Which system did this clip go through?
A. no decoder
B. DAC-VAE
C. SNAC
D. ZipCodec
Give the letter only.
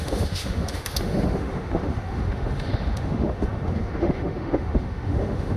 B